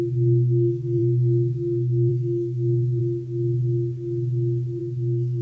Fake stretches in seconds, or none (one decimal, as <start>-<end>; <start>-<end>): 0.0-3.0; 4.8-5.4